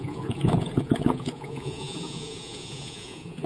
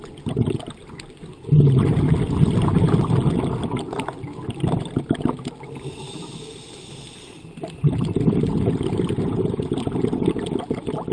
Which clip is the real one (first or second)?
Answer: second